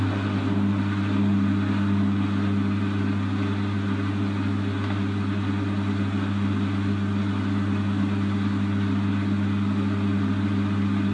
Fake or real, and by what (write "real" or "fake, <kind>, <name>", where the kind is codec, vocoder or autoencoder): real